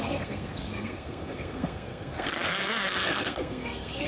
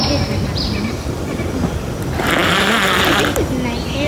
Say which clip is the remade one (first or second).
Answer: first